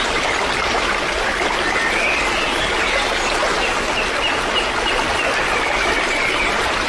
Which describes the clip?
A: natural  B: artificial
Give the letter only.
A